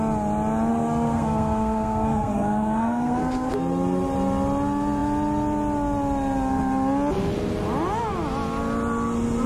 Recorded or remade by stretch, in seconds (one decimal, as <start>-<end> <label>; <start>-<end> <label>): 0.0-0.7 recorded; 0.7-3.5 remade; 3.5-9.5 recorded